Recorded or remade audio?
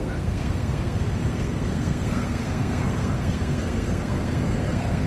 remade